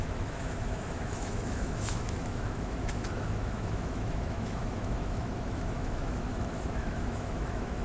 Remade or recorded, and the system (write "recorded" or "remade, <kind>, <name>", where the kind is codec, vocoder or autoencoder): remade, autoencoder, DAC-VAE